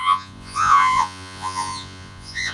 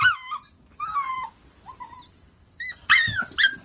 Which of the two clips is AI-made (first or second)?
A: first